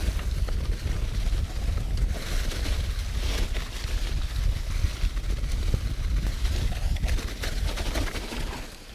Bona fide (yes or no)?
yes